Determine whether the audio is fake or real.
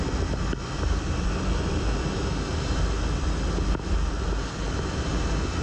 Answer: fake